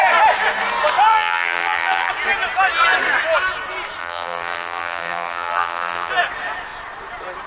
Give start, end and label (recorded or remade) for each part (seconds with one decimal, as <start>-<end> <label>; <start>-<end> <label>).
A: 0.0-1.1 recorded; 1.1-2.1 remade; 2.1-4.0 recorded; 4.0-6.1 remade; 6.1-7.5 recorded